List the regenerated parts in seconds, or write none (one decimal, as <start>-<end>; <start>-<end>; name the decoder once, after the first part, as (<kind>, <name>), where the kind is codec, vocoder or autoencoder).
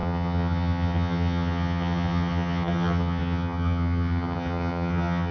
0.0-5.3 (vocoder, HiFi-GAN)